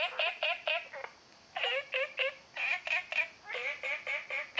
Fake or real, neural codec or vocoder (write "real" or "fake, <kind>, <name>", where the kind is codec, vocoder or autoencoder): real